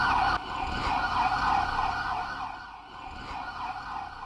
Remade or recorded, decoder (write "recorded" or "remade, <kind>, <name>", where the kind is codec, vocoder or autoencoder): recorded